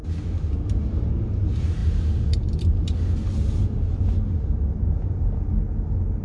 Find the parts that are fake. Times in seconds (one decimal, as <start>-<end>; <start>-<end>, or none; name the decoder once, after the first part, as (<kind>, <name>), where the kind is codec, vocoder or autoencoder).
none